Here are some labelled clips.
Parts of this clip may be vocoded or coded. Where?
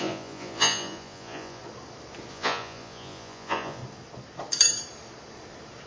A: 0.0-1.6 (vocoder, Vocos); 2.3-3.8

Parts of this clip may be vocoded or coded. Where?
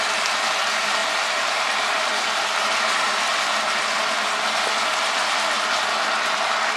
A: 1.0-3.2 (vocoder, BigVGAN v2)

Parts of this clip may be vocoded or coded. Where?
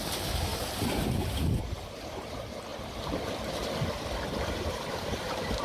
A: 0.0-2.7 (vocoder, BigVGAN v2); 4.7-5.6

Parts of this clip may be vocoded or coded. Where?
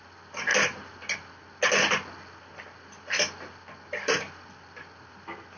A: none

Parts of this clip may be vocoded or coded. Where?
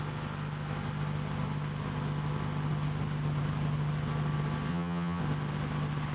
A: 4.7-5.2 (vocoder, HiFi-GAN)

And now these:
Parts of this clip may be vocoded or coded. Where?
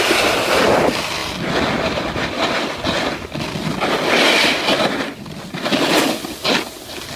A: none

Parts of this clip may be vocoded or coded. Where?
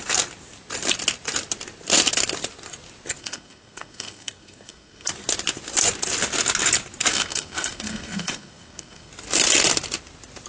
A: 3.2-5.1 (codec, SNAC); 7.1-9.1